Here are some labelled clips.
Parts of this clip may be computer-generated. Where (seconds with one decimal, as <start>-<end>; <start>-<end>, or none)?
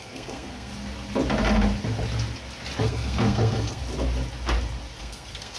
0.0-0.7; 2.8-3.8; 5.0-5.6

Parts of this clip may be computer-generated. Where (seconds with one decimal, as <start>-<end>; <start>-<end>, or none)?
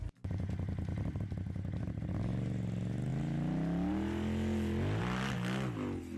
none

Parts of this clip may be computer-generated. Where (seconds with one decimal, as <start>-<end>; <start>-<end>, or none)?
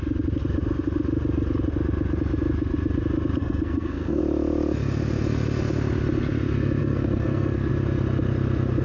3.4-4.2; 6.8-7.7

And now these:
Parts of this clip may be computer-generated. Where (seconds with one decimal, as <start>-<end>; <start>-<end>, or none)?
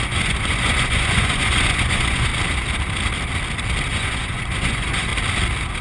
0.0-2.3; 3.9-5.1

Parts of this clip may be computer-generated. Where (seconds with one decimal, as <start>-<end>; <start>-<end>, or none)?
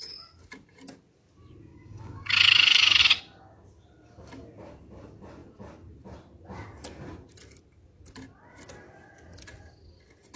1.7-3.0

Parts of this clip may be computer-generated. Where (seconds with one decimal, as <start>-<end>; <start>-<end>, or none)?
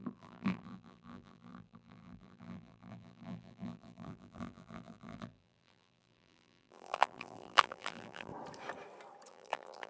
0.0-8.3; 9.3-9.9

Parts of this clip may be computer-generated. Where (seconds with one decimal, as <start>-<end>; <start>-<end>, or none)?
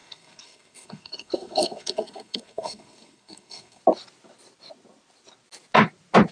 0.0-3.8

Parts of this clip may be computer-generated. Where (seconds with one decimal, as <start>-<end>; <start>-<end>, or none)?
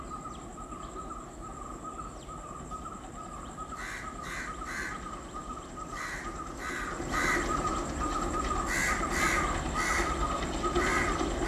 none